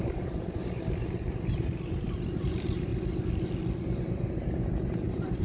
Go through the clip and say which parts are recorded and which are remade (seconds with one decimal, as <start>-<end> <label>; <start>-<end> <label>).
0.0-2.9 remade; 2.9-4.0 recorded; 4.0-5.4 remade